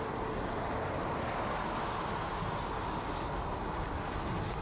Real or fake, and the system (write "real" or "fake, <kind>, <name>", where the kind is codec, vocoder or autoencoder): real